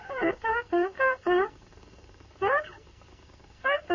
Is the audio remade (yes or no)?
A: yes